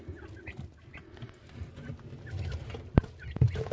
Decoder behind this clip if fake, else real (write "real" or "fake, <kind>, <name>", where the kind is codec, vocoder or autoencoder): real